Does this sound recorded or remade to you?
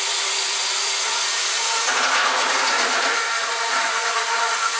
remade